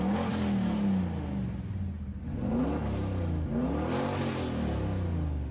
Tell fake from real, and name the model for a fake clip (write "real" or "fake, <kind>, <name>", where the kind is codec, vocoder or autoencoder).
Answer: real